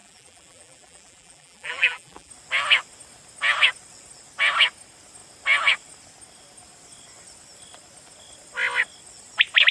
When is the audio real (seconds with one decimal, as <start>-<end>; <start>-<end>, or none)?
2.3-9.7